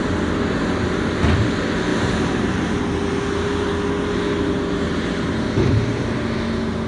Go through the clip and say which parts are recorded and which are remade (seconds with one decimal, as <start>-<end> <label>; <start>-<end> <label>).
0.0-1.9 recorded; 1.9-2.8 remade; 2.8-6.9 recorded